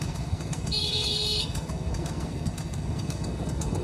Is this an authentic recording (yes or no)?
no